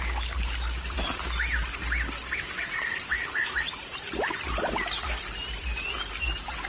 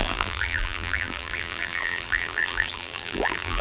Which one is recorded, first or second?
first